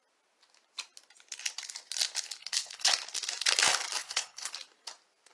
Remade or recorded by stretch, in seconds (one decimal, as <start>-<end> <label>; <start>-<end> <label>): 0.0-2.4 recorded; 2.4-2.9 remade; 2.9-4.0 recorded; 4.0-4.5 remade; 4.5-5.3 recorded